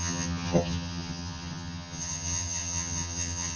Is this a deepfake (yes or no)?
yes